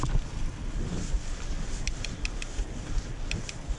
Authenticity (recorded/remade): recorded